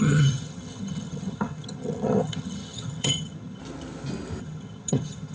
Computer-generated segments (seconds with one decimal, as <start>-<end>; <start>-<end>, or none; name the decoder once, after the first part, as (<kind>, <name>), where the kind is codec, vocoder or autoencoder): 0.0-3.6 (vocoder, HiFi-GAN); 4.4-5.3